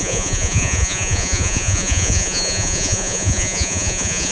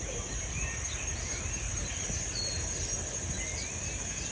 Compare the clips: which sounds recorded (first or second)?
second